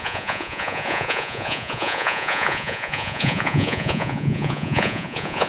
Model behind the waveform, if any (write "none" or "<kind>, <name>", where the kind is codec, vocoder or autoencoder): vocoder, Vocos